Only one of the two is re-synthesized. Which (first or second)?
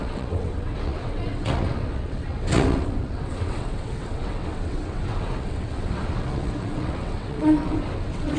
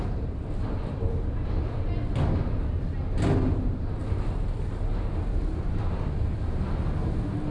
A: first